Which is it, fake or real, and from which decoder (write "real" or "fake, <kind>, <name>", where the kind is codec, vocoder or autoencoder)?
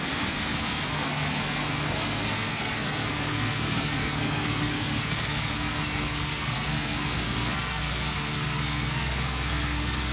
fake, codec, SNAC